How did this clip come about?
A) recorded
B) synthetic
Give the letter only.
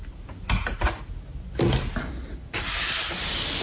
A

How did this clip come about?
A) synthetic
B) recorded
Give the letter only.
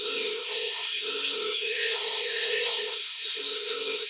A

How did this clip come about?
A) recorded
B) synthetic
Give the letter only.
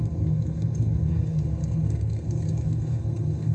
B